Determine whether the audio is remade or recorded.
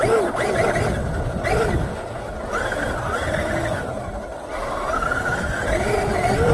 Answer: recorded